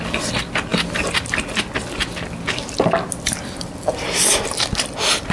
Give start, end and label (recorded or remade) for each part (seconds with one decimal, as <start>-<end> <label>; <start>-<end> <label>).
0.0-5.3 recorded